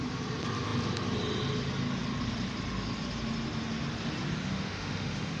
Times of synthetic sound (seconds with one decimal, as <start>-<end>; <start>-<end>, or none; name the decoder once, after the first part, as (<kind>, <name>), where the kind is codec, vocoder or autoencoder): 4.4-5.4 (autoencoder, DAC-VAE)